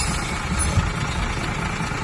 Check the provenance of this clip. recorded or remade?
recorded